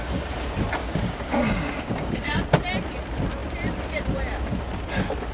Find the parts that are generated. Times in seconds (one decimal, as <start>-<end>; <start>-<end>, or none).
0.8-2.4